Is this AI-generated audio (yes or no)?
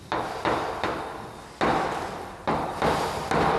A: no